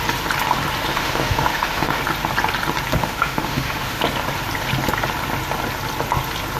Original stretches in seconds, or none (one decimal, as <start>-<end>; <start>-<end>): 0.0-0.9; 2.0-3.0; 4.0-6.6